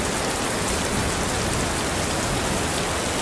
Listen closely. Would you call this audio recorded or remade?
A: recorded